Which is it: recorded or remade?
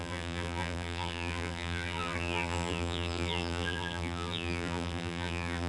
remade